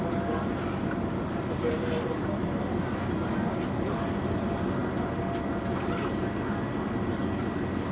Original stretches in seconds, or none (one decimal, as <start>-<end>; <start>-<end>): 0.0-7.9